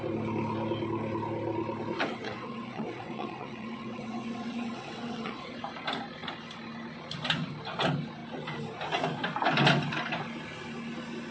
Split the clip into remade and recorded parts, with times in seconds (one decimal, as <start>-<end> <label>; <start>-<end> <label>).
0.0-2.1 recorded; 2.1-5.6 remade; 5.6-11.3 recorded